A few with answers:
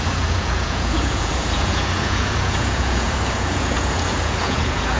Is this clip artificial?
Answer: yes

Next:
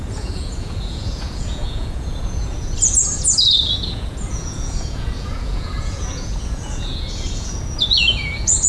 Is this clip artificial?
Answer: yes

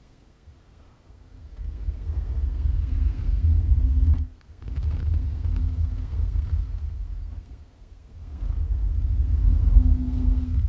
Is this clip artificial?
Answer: yes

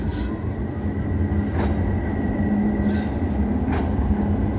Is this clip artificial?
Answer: no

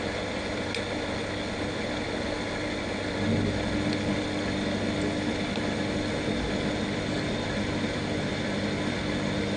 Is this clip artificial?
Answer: no